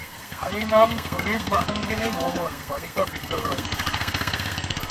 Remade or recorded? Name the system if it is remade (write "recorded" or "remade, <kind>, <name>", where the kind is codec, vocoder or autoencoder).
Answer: remade, codec, SNAC